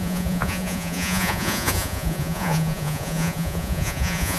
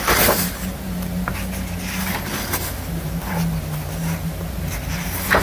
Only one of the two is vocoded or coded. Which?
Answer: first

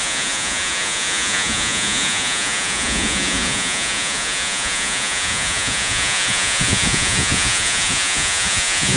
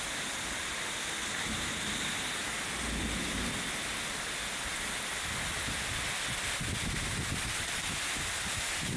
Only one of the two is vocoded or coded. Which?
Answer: first